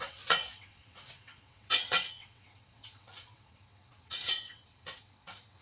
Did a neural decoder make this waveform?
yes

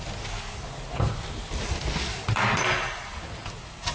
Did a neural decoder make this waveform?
no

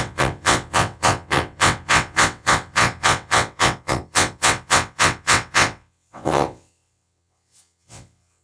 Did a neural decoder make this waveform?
yes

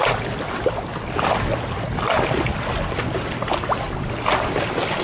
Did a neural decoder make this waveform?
no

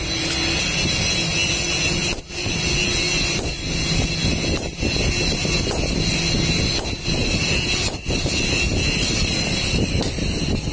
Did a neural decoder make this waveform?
no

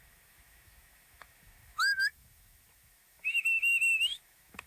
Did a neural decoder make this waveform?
yes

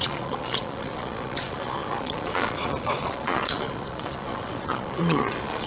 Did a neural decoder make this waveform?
yes